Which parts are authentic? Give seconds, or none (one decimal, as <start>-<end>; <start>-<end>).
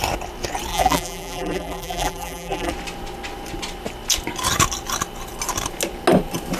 0.0-0.7; 2.7-6.6